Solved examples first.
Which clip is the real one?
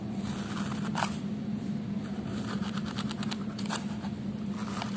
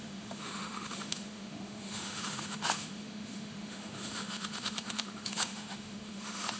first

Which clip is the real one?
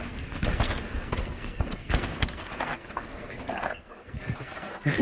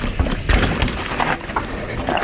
second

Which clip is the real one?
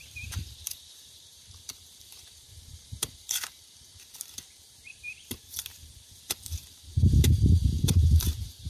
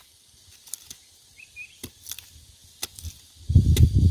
second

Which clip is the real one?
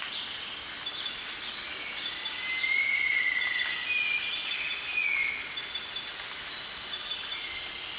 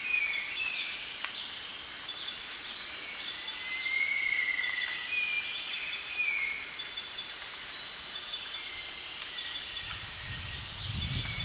first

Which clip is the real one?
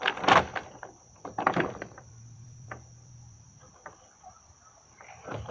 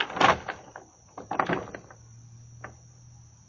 second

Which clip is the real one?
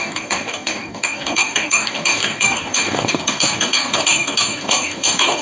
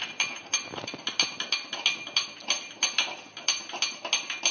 second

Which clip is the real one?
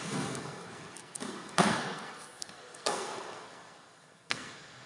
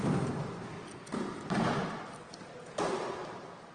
second